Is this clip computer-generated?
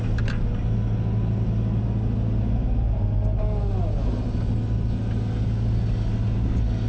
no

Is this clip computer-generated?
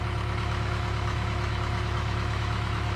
yes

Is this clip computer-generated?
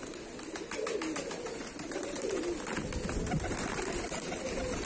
no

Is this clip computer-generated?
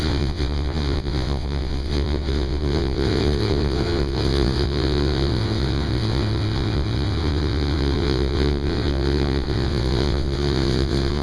yes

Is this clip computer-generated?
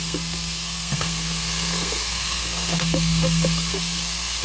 yes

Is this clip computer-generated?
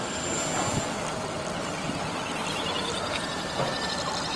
no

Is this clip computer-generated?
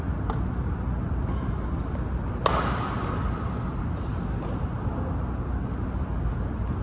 no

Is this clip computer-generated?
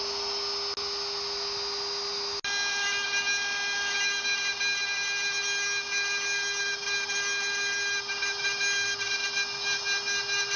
no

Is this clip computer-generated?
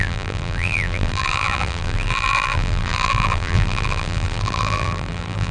yes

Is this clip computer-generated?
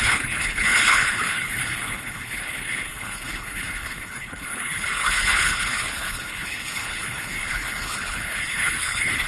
yes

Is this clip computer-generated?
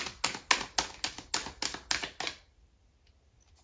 no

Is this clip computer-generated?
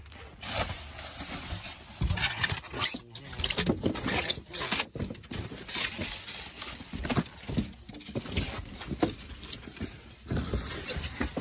no